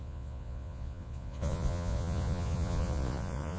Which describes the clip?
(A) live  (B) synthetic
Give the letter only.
B